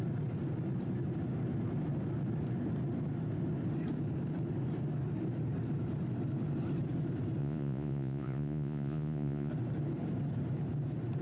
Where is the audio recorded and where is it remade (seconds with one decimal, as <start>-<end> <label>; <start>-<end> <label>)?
0.0-7.4 recorded; 7.4-9.5 remade; 9.5-11.2 recorded